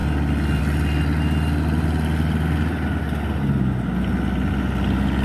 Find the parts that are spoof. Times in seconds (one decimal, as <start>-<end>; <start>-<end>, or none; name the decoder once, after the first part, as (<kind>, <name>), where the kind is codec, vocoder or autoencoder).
none